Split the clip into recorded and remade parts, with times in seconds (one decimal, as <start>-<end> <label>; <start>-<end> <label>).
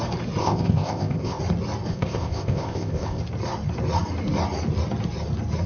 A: 0.0-0.4 recorded; 0.4-1.4 remade; 1.4-1.9 recorded; 1.9-3.2 remade; 3.2-5.7 recorded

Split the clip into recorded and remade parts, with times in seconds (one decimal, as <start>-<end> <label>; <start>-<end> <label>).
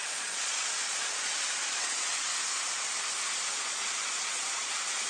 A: 0.0-2.3 remade; 2.3-3.5 recorded; 3.5-5.1 remade